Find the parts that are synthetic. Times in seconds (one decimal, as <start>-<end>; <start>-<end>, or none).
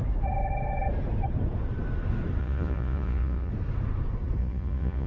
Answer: 2.4-3.5; 4.4-5.1